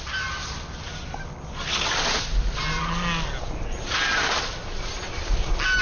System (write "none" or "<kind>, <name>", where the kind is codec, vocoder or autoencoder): none